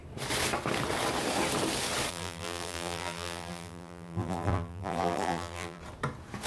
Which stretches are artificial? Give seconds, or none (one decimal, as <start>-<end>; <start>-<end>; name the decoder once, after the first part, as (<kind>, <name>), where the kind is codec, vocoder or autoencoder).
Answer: 2.1-5.8 (vocoder, BigVGAN v2)